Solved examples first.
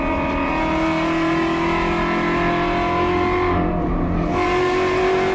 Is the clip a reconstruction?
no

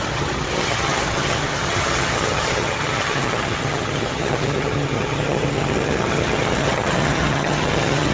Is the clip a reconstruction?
yes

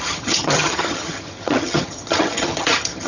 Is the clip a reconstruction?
yes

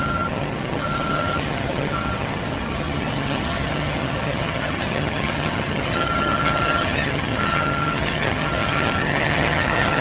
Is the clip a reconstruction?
yes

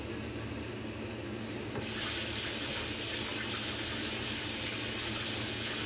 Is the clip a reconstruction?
no